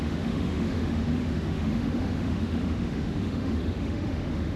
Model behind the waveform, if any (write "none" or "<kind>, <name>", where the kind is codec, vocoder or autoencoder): autoencoder, DAC-VAE